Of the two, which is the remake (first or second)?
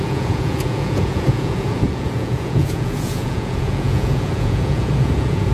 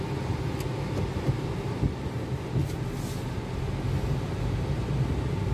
first